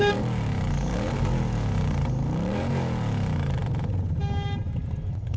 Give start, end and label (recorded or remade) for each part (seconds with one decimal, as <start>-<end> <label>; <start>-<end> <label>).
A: 0.0-3.6 remade; 3.6-4.8 recorded; 4.8-5.4 remade